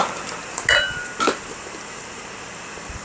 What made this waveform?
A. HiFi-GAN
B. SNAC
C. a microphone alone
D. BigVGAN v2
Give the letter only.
C